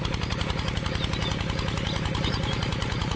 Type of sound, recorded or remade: recorded